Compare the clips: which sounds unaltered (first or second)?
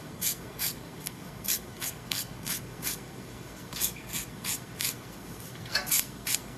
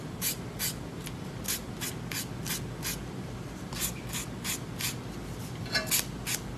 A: second